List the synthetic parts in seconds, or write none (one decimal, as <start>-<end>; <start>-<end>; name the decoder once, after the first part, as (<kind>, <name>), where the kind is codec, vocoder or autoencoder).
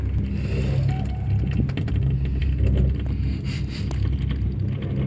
none